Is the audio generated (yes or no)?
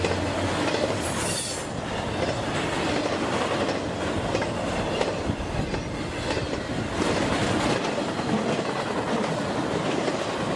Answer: no